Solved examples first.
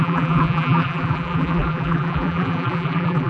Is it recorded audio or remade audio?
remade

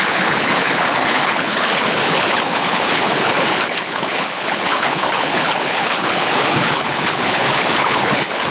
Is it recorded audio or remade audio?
remade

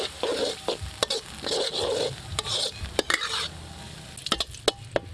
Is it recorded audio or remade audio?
recorded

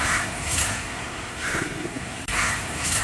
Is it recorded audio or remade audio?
remade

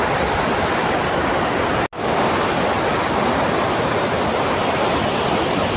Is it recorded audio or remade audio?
recorded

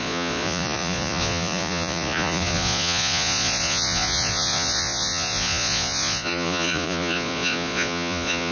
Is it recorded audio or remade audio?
remade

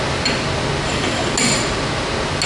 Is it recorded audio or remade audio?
recorded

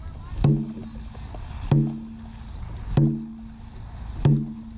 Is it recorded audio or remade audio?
recorded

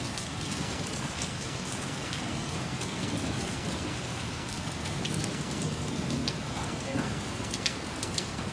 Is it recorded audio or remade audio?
remade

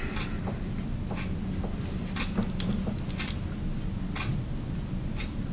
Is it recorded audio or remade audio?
recorded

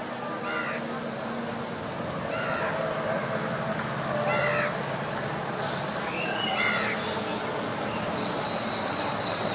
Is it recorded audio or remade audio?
recorded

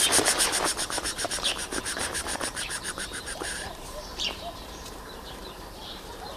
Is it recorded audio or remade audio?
remade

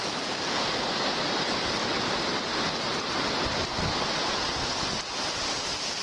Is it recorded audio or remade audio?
recorded